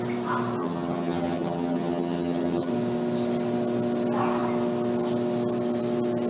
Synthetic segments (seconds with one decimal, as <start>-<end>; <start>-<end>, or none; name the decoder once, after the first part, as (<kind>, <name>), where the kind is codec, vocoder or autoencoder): 0.6-2.7 (vocoder, HiFi-GAN)